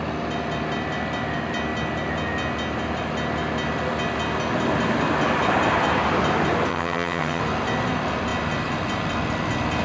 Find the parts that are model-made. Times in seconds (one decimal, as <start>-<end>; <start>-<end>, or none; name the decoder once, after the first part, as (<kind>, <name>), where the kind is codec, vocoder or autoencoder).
6.7-7.4 (vocoder, HiFi-GAN)